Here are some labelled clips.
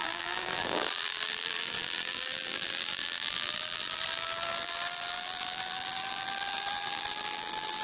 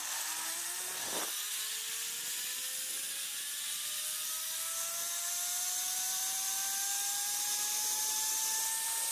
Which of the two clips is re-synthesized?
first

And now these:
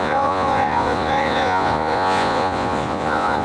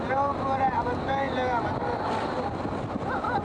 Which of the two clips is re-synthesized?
first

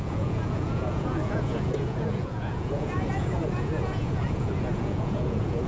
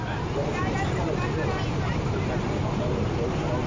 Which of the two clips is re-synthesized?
first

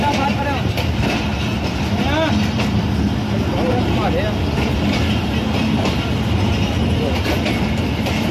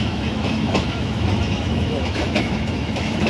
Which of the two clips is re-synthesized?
second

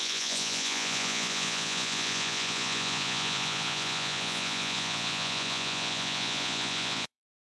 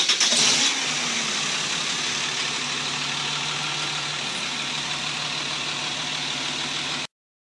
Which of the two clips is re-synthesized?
first